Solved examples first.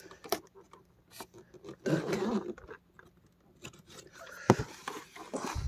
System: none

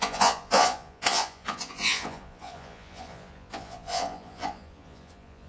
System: vocoder, Vocos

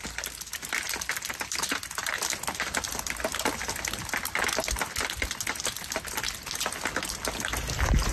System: none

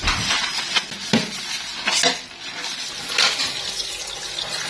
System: none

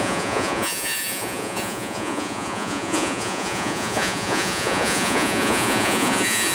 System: vocoder, Vocos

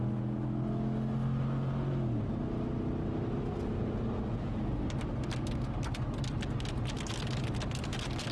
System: none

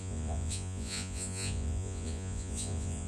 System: vocoder, Vocos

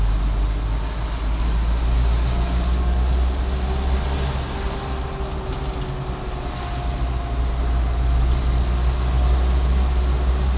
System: none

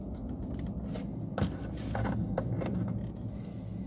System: none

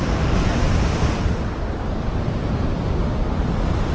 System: none